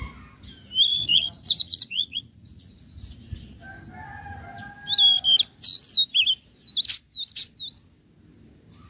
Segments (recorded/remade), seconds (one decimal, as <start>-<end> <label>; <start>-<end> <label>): 0.0-0.9 recorded; 0.9-2.8 remade; 2.8-8.9 recorded